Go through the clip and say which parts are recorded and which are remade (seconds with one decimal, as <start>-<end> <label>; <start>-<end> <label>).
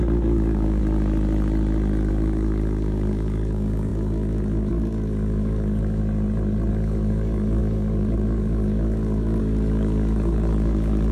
0.0-0.8 remade; 0.8-2.1 recorded; 2.1-6.0 remade; 6.0-6.7 recorded; 6.7-11.1 remade